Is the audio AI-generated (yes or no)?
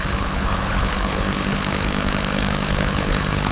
yes